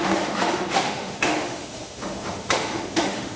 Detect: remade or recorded remade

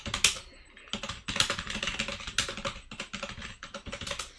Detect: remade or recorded recorded